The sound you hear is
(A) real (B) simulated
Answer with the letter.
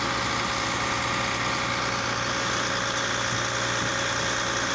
A